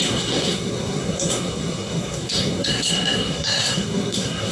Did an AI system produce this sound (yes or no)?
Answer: yes